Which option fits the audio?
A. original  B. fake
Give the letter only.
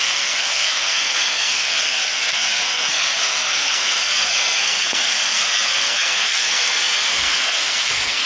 B